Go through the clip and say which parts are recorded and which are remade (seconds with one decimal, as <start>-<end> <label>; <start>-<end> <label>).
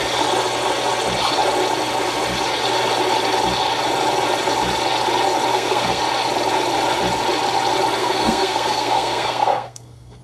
0.0-5.5 recorded; 5.5-6.0 remade; 6.0-8.0 recorded; 8.0-10.2 remade